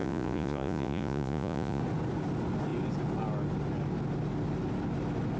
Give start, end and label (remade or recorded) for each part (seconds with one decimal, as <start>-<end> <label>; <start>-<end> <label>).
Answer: 0.0-1.8 remade; 1.8-5.4 recorded